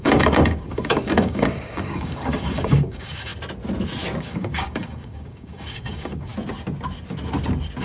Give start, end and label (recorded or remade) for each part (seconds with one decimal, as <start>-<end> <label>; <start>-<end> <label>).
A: 0.0-3.3 remade; 3.3-4.2 recorded; 4.2-6.3 remade; 6.3-7.8 recorded